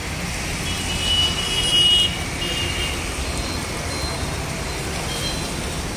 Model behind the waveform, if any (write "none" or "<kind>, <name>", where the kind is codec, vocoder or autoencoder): none